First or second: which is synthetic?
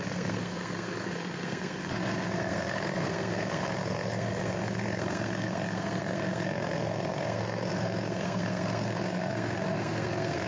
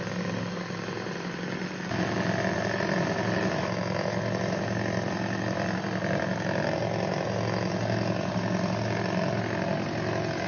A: first